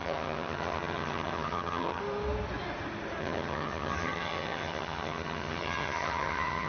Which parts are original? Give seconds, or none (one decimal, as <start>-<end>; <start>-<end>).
2.0-3.2